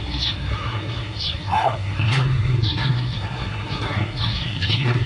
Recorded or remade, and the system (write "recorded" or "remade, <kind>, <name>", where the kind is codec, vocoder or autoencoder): remade, codec, SNAC